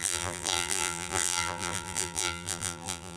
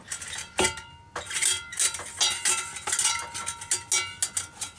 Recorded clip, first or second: second